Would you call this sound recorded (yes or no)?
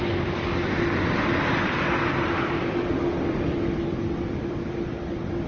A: yes